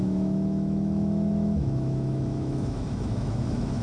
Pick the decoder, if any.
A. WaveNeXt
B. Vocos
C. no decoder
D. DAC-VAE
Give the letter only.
D